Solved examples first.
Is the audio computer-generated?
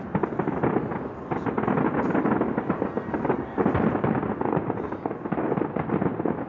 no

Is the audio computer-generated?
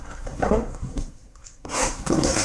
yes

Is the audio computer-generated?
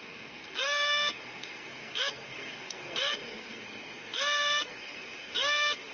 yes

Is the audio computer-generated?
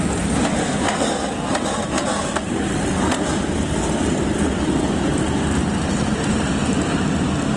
no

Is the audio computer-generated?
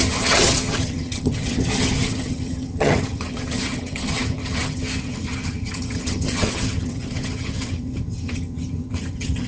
yes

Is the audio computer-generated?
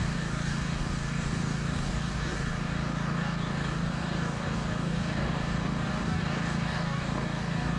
yes